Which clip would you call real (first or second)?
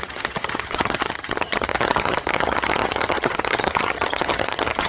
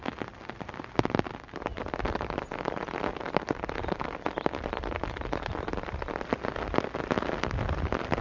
second